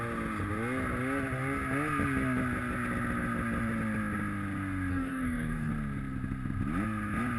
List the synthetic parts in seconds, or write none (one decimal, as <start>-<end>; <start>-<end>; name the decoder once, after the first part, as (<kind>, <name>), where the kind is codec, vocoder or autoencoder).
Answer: 4.9-5.7 (codec, DAC)